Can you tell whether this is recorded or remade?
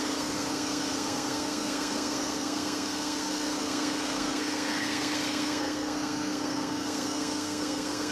remade